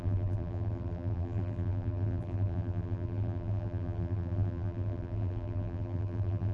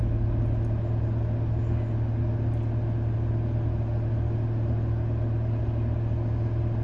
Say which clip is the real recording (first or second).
second